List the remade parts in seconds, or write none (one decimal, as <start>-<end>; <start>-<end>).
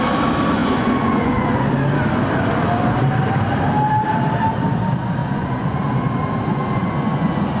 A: 0.6-1.7; 5.2-5.9; 6.5-7.6